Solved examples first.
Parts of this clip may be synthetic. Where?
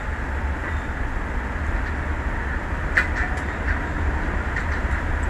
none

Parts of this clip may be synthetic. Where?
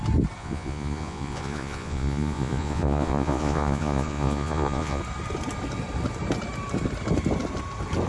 0.4-5.0